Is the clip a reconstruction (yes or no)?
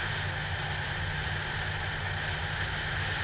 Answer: no